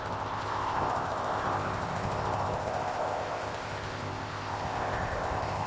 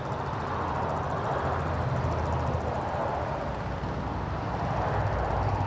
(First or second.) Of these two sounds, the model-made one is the first